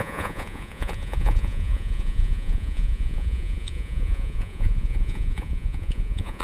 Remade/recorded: remade